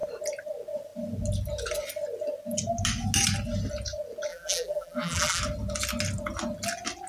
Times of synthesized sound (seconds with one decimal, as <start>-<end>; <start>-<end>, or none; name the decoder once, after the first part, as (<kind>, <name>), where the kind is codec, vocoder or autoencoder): 4.3-5.4 (vocoder, BigVGAN v2)